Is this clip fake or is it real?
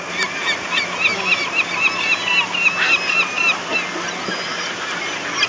real